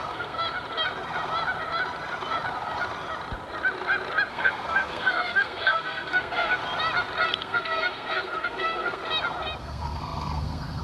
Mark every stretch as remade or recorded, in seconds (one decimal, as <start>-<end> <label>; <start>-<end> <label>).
0.0-0.4 remade; 0.4-4.3 recorded; 4.3-6.6 remade; 6.6-7.4 recorded; 7.4-9.0 remade; 9.0-9.6 recorded; 9.6-10.8 remade